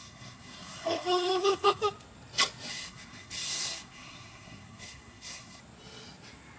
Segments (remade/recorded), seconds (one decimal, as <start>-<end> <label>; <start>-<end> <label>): 0.0-1.8 remade; 1.8-2.7 recorded; 2.7-5.6 remade; 5.6-6.6 recorded